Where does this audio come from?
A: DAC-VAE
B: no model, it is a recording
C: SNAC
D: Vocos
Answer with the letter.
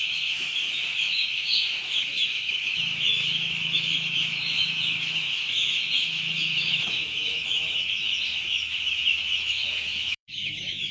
A